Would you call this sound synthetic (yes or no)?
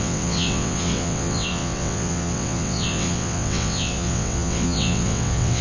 yes